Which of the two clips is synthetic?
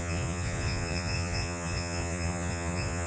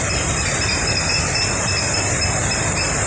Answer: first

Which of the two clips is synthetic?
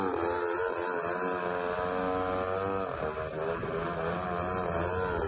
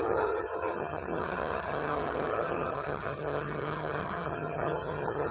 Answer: second